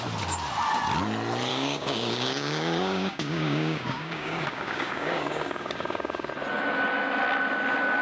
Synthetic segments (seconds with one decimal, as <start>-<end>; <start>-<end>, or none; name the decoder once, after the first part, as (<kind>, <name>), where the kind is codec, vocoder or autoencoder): 1.5-6.3 (codec, DAC)

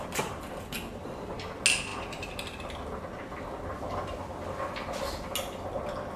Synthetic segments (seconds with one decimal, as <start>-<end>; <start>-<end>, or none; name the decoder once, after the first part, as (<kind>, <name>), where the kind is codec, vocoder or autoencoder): none

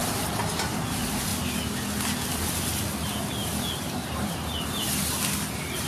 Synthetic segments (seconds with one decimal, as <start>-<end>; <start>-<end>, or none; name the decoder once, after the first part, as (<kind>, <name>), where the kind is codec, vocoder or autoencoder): none

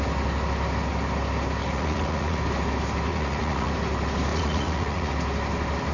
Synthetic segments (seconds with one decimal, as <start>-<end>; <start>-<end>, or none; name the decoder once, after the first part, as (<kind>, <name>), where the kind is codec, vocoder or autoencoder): 1.6-2.4 (vocoder, Vocos); 3.1-3.7; 4.3-5.1